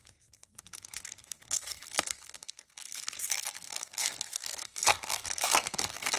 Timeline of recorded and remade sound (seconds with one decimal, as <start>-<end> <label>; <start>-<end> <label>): 0.0-6.2 remade